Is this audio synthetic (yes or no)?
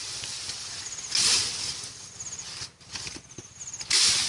no